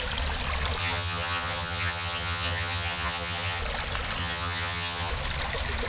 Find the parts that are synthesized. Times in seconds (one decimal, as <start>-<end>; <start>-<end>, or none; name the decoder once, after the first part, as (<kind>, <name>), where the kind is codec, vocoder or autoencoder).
0.8-3.6 (vocoder, HiFi-GAN); 4.2-5.1